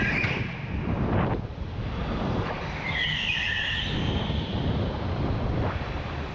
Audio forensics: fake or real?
fake